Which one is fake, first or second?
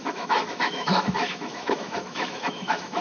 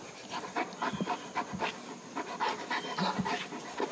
first